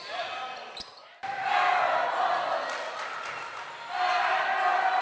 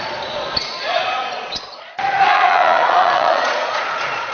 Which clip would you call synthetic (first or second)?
second